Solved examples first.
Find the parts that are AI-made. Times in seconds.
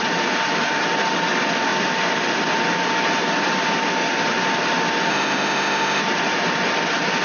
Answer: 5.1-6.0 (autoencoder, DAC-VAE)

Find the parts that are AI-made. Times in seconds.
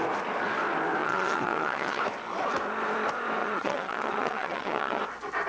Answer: 1.0-2.0 (vocoder, WaveNeXt); 3.4-5.0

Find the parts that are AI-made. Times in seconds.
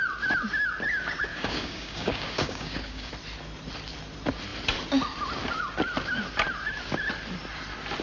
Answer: 1.3-3.1 (codec, DAC)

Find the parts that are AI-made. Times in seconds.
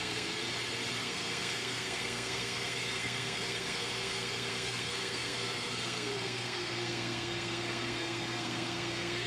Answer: 0.0-0.4 (codec, SNAC); 1.0-9.3